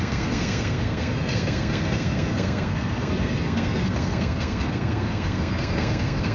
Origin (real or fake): fake